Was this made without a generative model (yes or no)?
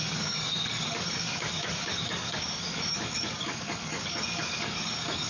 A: no